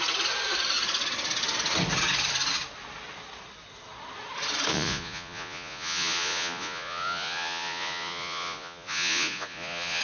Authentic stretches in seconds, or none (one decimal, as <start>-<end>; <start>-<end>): 0.0-4.7

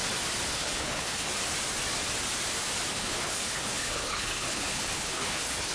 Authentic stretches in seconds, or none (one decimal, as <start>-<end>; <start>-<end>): 0.0-0.5; 1.3-2.9